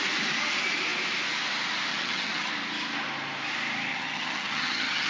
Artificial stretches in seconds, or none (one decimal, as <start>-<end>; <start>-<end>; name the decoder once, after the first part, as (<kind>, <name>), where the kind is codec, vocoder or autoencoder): 1.9-2.5 (vocoder, HiFi-GAN); 3.9-5.1